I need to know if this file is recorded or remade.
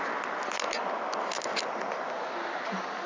recorded